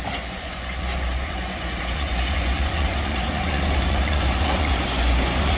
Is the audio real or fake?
fake